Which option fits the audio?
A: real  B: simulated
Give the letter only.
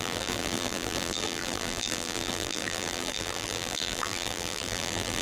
B